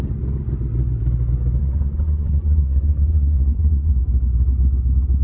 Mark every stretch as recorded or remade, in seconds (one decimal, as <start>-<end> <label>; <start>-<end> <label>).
0.0-1.6 recorded; 1.6-3.9 remade; 3.9-5.2 recorded